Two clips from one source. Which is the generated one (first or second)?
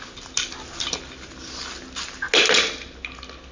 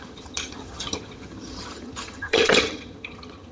second